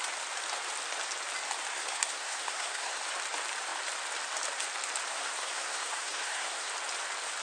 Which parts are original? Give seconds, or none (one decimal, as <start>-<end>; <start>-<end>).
0.0-1.7; 3.0-5.1; 6.7-7.4

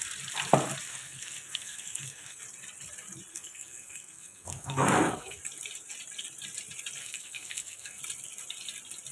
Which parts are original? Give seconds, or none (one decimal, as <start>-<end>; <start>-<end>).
0.0-0.9; 2.4-3.3; 5.4-7.0; 8.0-9.1

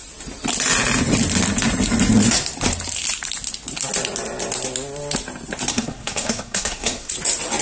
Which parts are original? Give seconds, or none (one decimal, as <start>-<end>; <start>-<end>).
0.0-5.7; 7.1-7.6

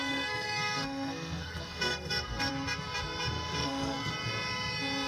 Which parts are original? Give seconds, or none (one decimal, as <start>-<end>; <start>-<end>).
2.5-3.6; 4.1-5.1

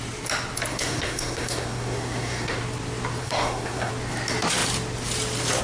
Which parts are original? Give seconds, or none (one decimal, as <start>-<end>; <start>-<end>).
0.0-0.7; 2.6-3.2; 3.9-5.6

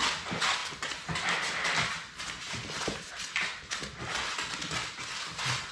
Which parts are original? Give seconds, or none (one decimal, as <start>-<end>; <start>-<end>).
0.0-5.7